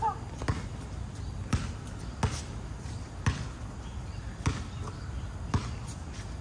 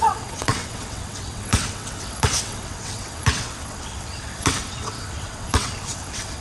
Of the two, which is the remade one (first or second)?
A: second